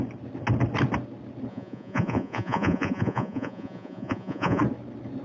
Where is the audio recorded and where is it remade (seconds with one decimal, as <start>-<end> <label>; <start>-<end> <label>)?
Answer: 0.0-1.5 recorded; 1.5-4.6 remade; 4.6-5.2 recorded